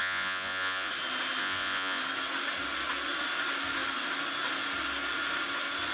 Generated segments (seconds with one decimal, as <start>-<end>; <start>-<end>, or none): 0.0-0.9; 1.4-2.0